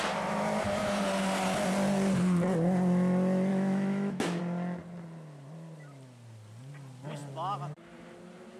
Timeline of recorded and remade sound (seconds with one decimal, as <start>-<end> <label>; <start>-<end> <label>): 0.0-3.5 recorded; 3.5-4.4 remade; 4.4-8.6 recorded